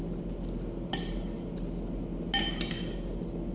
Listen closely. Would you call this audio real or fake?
real